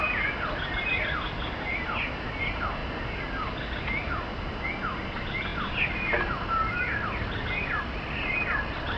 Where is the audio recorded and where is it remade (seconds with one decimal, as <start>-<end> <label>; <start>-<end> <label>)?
0.0-9.0 recorded